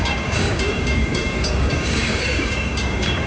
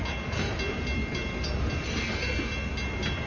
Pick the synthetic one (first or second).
first